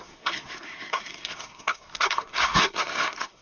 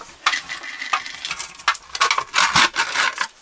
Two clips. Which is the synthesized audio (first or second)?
first